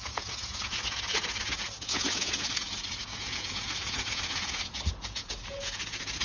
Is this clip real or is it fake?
fake